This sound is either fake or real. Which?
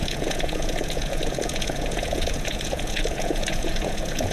fake